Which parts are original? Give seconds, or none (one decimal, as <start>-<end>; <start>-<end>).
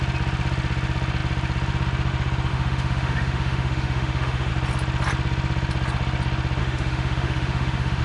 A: 0.0-2.5; 4.5-6.6